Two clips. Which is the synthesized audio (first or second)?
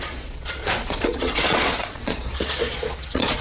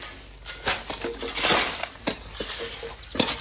first